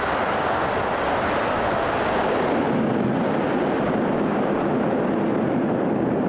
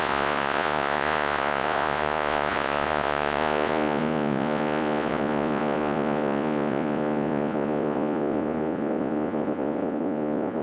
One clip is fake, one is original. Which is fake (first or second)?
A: second